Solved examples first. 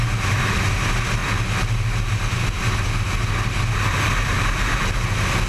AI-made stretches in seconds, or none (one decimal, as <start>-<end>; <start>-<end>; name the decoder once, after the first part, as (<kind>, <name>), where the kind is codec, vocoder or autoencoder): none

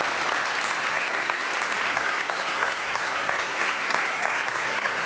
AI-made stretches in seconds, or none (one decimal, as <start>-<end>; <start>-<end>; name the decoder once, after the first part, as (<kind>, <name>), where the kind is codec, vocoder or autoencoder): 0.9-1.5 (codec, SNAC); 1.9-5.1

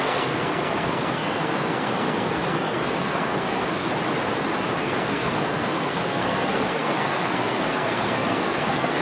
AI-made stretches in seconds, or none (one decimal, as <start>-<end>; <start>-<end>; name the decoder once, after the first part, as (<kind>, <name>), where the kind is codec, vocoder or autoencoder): 0.0-3.9 (codec, SNAC); 4.8-9.0

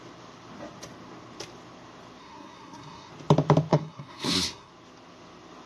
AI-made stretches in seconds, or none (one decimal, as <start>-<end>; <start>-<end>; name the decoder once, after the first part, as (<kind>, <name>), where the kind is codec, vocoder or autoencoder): 2.2-3.1 (codec, SNAC); 3.7-4.7

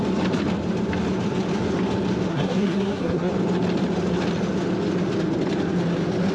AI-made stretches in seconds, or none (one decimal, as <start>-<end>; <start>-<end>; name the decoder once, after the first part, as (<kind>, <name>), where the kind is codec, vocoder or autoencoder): 2.3-3.3 (codec, SNAC)

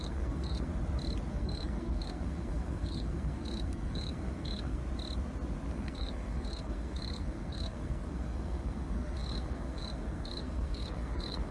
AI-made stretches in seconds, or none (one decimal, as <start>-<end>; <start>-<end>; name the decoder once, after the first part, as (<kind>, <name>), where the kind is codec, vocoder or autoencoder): 0.0-0.7 (codec, SNAC); 1.3-4.8; 5.7-11.5